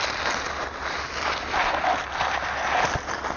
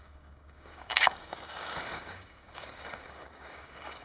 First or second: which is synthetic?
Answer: second